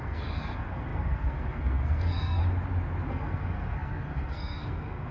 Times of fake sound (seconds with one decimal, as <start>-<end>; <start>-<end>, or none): 0.0-2.4; 3.1-5.1